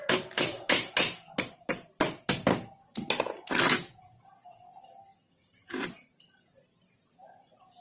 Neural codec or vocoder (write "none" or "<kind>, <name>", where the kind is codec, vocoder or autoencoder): none